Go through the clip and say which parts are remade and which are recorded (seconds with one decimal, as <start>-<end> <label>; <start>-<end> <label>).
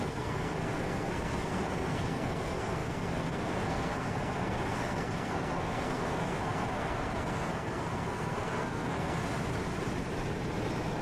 0.0-9.2 remade; 9.2-11.0 recorded